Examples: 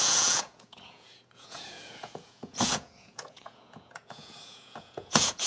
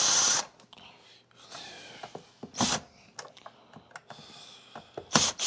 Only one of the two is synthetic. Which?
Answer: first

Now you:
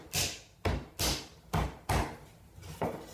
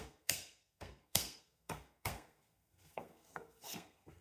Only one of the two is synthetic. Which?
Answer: second